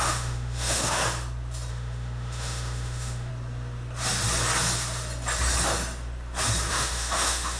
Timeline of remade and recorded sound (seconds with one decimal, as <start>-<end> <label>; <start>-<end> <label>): 0.0-1.0 remade; 1.0-1.7 recorded; 1.7-3.3 remade; 3.3-6.7 recorded; 6.7-7.6 remade